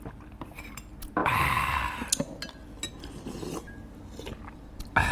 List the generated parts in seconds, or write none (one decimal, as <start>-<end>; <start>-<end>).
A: none